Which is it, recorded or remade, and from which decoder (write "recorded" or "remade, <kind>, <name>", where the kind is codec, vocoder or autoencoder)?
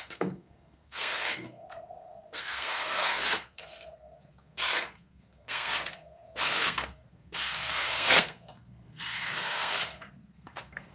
remade, codec, SNAC